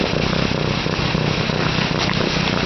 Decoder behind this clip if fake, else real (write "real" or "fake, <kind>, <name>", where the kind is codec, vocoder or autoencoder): real